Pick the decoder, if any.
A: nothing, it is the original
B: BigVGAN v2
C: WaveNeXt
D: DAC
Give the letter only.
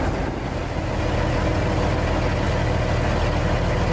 A